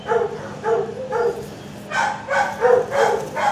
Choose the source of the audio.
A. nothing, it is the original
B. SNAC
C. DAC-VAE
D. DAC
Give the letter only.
A